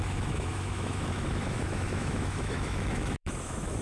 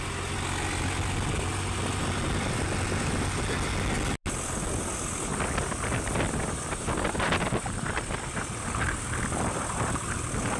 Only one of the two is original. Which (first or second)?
second